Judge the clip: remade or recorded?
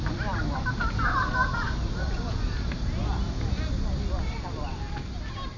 recorded